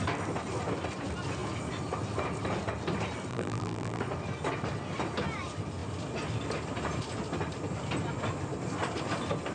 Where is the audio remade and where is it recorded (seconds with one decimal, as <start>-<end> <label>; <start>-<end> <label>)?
0.0-3.3 recorded; 3.3-4.0 remade; 4.0-9.5 recorded